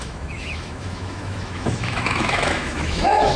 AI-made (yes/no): yes